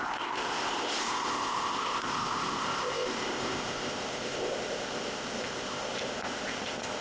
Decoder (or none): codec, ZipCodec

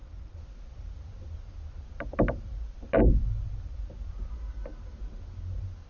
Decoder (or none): none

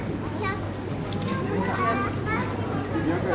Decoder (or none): none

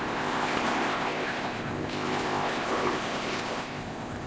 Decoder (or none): codec, ZipCodec